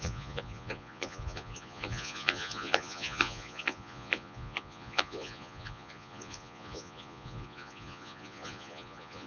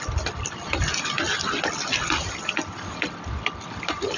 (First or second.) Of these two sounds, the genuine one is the second